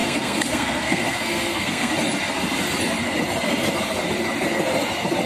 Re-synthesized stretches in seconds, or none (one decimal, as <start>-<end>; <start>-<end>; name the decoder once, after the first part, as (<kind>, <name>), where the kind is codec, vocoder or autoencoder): 0.0-1.9 (codec, SNAC)